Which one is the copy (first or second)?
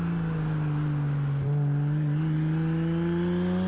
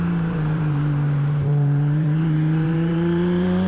second